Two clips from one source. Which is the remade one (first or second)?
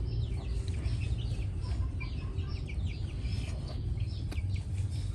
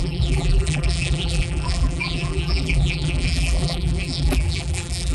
second